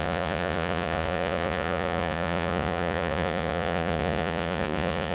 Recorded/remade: remade